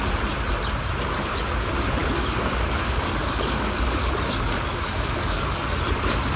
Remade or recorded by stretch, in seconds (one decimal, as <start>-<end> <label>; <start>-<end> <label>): 0.0-2.0 recorded; 2.0-5.6 remade; 5.6-6.4 recorded